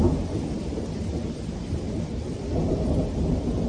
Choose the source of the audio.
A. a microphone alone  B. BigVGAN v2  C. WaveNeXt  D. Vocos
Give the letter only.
B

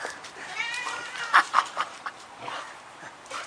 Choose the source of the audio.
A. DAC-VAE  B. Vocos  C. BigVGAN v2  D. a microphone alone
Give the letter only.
C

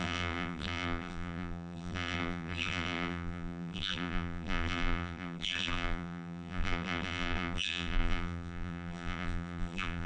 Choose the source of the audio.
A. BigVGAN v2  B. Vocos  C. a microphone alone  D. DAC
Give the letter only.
A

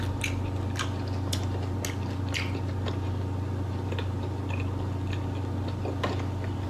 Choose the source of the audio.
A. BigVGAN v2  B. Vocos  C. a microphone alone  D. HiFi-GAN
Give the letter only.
C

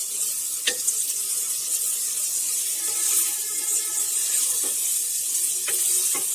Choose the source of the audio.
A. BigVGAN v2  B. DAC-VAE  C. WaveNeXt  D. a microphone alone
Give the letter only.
D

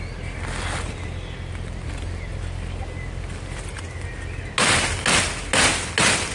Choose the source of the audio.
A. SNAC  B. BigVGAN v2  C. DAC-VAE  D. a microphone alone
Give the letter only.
D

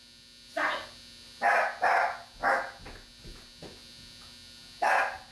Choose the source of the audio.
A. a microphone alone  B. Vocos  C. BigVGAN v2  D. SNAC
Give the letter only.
A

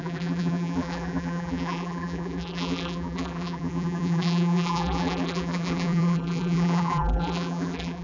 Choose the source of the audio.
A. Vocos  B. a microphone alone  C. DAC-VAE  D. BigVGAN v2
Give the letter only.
D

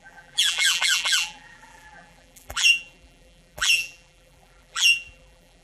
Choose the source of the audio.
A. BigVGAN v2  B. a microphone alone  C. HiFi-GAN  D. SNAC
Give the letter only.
A